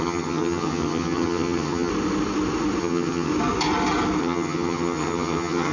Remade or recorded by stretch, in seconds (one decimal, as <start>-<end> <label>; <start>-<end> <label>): 0.0-1.9 remade; 1.9-2.8 recorded; 2.8-3.3 remade; 3.3-4.2 recorded; 4.2-5.7 remade